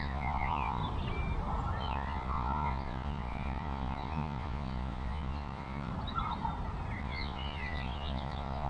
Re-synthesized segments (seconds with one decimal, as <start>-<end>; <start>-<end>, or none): 0.0-0.8; 1.8-5.9; 7.0-8.7